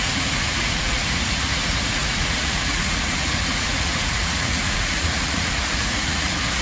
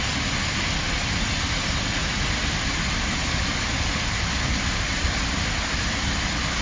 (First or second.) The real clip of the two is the second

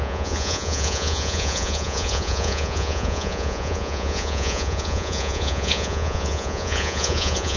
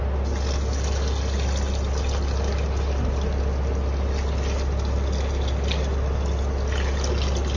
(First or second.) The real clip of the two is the second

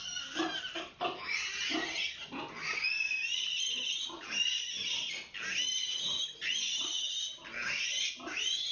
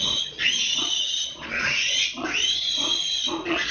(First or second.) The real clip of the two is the first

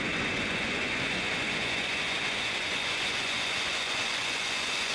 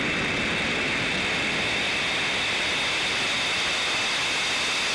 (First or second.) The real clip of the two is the second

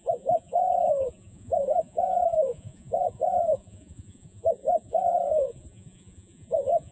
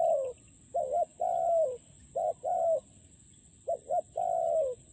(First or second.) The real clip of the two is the second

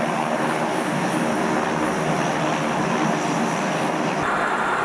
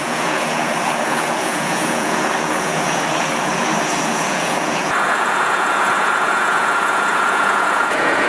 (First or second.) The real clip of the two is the first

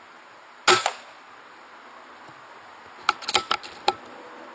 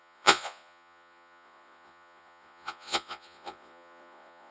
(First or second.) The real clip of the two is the first